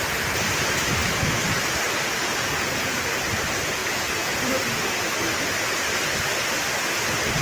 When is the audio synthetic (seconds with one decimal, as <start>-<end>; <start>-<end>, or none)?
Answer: 2.2-3.0; 3.8-4.4